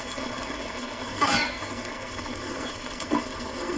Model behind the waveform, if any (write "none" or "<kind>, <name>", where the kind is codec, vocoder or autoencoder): codec, SNAC